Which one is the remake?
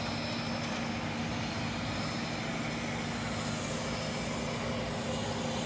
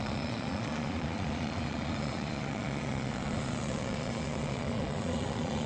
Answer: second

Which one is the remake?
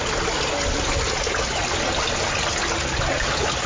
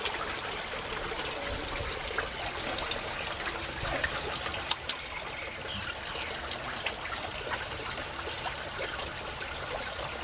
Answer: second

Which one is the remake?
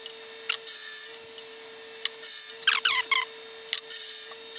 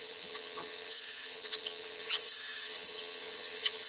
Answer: second